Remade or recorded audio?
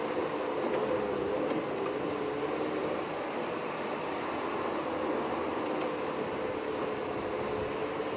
recorded